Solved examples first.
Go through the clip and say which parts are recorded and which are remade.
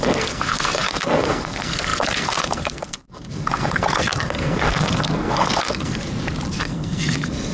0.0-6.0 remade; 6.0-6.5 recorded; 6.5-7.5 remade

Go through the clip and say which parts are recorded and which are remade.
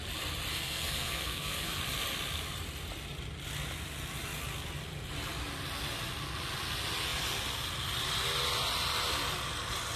0.0-0.5 recorded; 0.5-1.8 remade; 1.8-10.0 recorded